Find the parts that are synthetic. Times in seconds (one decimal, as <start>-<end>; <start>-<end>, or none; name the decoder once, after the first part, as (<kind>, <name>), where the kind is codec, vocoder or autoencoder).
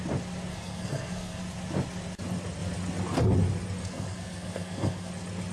0.5-1.4 (codec, SNAC); 3.8-5.1